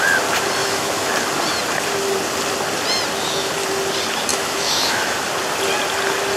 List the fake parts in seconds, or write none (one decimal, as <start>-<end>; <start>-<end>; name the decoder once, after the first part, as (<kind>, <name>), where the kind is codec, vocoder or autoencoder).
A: 0.6-1.1 (autoencoder, DAC-VAE); 4.3-5.2